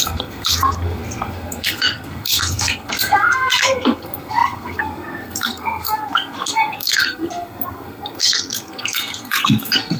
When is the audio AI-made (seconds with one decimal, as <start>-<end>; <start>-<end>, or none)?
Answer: 0.0-10.0